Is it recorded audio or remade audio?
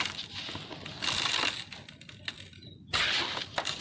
recorded